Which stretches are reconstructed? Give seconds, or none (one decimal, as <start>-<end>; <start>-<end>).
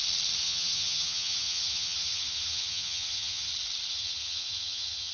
0.4-3.5; 3.9-5.1